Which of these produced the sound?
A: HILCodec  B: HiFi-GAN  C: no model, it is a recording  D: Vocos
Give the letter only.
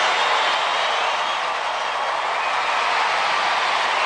C